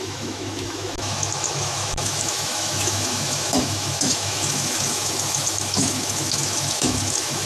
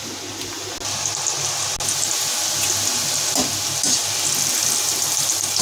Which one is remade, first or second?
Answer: first